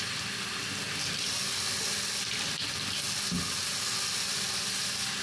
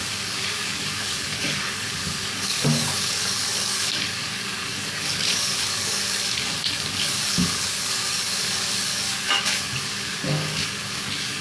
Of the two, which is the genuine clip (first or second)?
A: first